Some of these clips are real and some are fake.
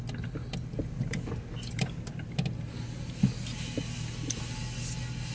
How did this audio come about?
real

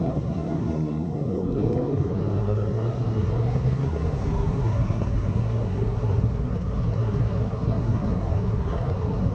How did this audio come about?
fake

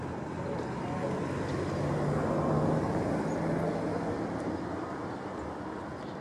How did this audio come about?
real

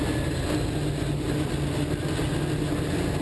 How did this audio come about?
real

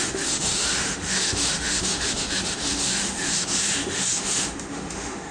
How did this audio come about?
fake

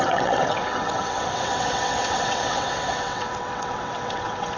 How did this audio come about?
fake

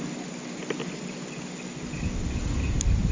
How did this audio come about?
real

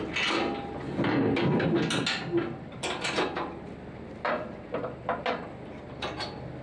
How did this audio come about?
real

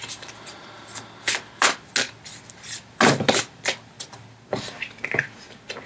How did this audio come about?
real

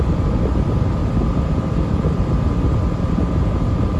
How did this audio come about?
real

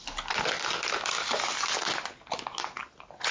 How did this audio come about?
real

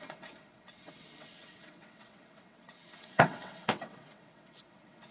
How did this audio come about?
fake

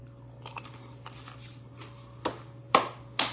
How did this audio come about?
real